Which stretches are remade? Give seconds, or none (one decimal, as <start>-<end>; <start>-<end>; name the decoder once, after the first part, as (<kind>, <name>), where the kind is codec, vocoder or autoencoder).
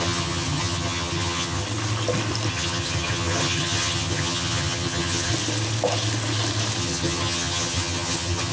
0.0-1.6 (vocoder, HiFi-GAN); 2.5-5.3; 6.8-8.5